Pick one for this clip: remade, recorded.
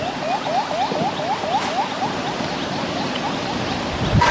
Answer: recorded